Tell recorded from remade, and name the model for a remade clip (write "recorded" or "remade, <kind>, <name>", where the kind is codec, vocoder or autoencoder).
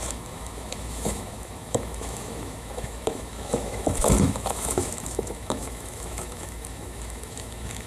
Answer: remade, autoencoder, DAC-VAE